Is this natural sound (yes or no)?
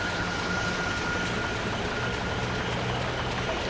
yes